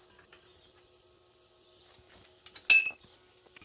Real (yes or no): yes